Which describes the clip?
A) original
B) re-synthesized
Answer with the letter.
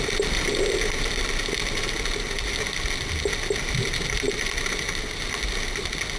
A